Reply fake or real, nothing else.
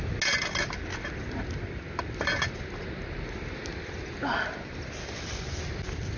real